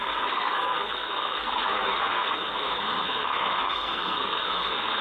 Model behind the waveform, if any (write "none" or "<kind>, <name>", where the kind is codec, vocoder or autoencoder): codec, SNAC